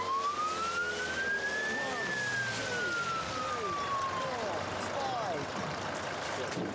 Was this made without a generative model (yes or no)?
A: yes